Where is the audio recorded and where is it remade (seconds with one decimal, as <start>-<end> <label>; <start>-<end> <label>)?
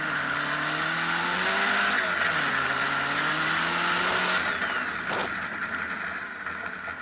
0.0-5.2 recorded; 5.2-6.4 remade; 6.4-7.0 recorded